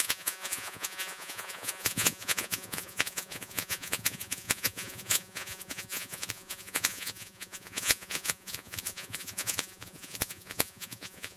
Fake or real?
fake